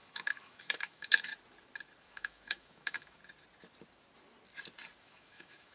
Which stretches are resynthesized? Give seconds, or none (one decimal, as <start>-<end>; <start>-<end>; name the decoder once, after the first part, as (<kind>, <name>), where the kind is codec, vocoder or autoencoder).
0.0-1.3 (autoencoder, DAC-VAE); 2.0-3.2; 5.0-5.7